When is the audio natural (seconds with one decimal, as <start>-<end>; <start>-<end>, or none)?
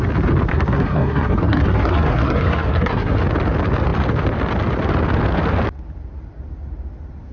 0.0-0.5; 3.2-7.3